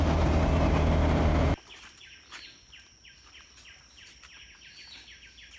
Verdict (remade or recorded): recorded